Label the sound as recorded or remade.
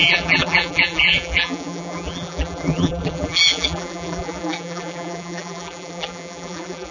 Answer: remade